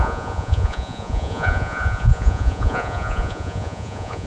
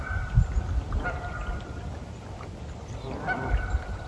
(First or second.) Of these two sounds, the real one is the second